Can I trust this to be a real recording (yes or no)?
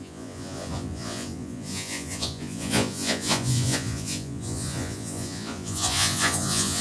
no